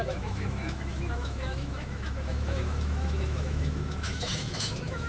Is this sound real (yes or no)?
no